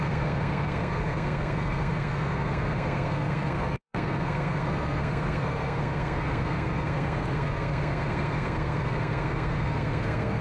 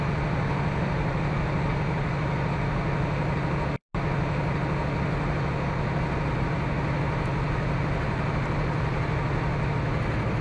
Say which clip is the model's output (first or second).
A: first